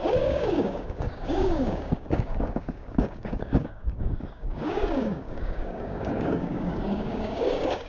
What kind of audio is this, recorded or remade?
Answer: remade